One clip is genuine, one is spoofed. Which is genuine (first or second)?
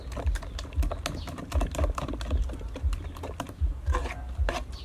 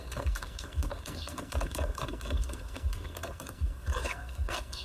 first